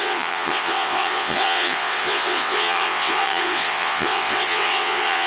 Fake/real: fake